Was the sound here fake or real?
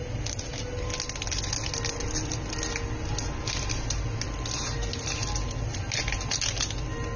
real